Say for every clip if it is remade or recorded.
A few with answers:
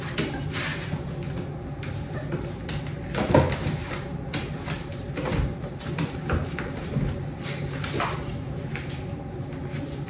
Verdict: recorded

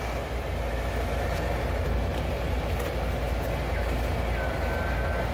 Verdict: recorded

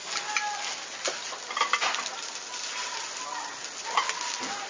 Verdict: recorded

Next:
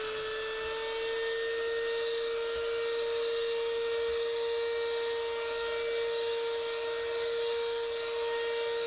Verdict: recorded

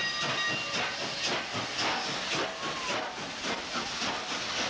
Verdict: recorded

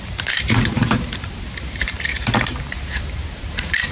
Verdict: remade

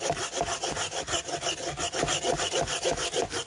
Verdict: recorded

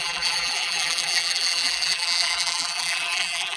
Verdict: remade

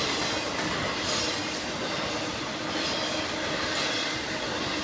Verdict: recorded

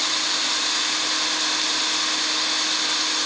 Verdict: recorded